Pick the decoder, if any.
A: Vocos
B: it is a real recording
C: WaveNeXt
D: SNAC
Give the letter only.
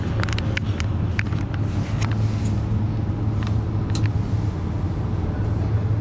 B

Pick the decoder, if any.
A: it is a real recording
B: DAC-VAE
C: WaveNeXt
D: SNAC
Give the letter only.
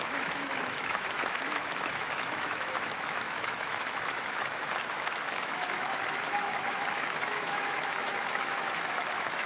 B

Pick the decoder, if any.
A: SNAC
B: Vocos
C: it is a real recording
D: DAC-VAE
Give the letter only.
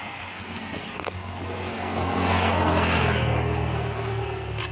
A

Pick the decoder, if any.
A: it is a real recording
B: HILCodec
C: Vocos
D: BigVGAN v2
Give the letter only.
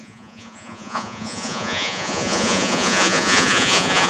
C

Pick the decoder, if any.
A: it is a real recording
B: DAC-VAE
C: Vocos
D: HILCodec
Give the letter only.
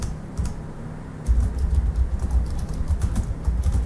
A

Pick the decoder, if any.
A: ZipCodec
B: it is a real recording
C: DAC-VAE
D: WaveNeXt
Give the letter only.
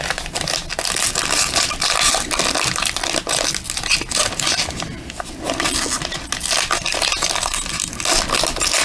B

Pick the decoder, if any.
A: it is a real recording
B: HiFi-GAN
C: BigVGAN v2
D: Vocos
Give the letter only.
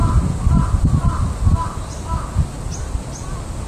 A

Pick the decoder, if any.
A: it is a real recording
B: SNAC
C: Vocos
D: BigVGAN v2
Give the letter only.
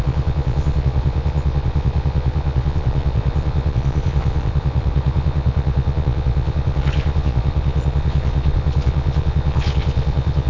C